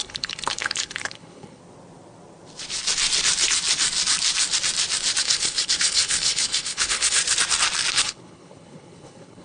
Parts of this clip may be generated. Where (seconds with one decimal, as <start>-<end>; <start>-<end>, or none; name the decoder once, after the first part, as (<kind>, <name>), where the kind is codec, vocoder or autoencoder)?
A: 0.0-1.6 (codec, HILCodec); 5.2-7.2; 7.9-9.4